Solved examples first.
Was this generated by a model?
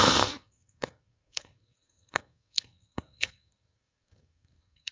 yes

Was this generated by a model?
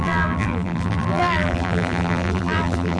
yes